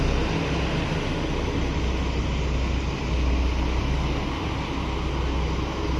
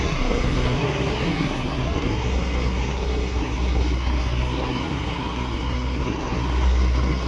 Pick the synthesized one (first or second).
second